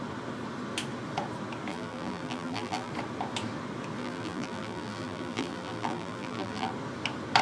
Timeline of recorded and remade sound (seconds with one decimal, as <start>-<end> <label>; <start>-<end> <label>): 0.0-1.7 recorded; 1.7-2.9 remade; 2.9-4.0 recorded; 4.0-6.7 remade; 6.7-7.4 recorded